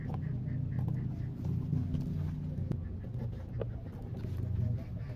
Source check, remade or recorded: recorded